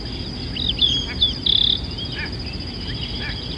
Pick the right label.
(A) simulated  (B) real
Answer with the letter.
B